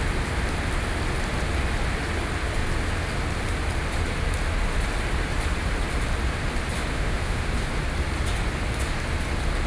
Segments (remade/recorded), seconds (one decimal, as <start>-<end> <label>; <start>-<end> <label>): 0.0-6.9 recorded; 6.9-7.5 remade; 7.5-9.7 recorded

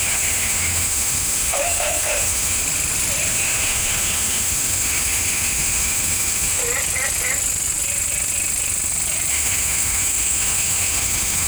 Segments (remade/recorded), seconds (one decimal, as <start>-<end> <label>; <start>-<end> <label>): 0.0-2.6 remade; 2.6-3.3 recorded; 3.3-6.6 remade; 6.6-9.3 recorded; 9.3-11.5 remade

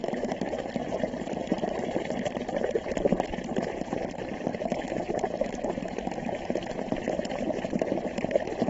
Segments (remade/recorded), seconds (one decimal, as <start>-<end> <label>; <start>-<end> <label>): 0.0-0.7 remade; 0.7-4.5 recorded; 4.5-6.7 remade; 6.7-8.7 recorded

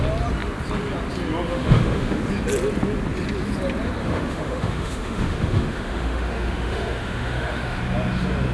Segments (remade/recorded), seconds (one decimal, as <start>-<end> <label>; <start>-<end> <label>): 0.0-1.5 recorded; 1.5-2.3 remade; 2.3-4.0 recorded; 4.0-7.8 remade; 7.8-8.5 recorded